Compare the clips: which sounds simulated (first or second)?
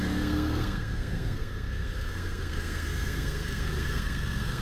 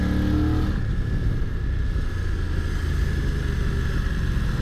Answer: first